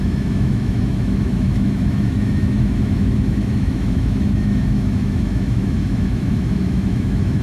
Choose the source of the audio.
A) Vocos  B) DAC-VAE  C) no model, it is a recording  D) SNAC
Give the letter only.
B